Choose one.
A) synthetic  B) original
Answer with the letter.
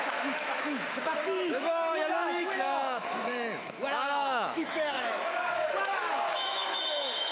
A